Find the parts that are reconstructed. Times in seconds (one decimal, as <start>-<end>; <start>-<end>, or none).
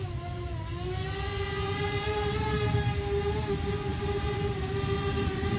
3.9-4.4